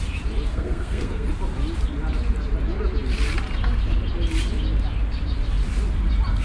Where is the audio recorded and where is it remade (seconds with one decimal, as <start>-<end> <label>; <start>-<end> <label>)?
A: 0.0-0.5 recorded; 0.5-1.3 remade; 1.3-6.4 recorded